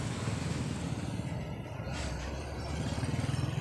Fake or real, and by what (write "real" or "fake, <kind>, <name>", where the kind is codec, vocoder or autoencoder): real